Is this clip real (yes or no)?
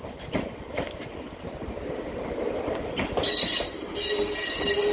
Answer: yes